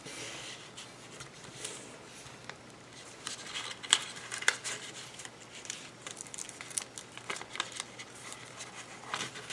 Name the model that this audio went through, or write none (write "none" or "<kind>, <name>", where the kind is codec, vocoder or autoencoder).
none